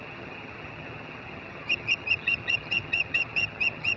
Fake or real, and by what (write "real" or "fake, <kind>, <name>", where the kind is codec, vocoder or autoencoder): fake, vocoder, HiFi-GAN